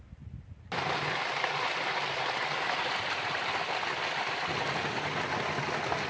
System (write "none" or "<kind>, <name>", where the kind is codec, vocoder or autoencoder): none